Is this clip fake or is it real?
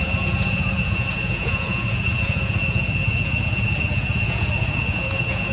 fake